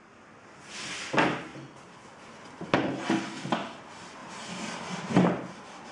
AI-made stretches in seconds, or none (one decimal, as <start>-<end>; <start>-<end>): none